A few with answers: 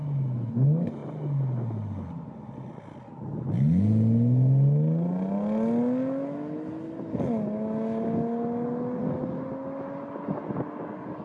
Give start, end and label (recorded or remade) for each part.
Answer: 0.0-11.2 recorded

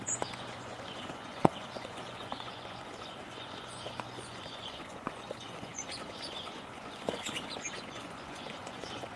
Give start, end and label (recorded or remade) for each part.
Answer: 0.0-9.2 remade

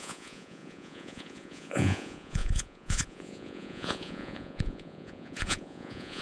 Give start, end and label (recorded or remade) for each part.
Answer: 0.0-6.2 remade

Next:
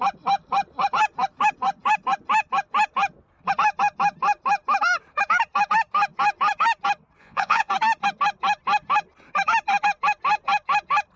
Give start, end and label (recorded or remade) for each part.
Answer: 0.0-7.2 recorded; 7.2-7.7 remade; 7.7-11.2 recorded